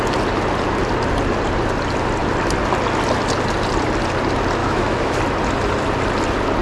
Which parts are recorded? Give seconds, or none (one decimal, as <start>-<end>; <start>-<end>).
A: 0.0-4.6; 5.2-6.6